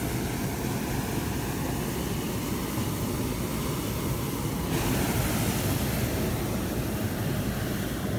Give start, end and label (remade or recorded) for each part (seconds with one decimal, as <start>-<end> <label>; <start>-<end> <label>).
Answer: 0.0-8.2 recorded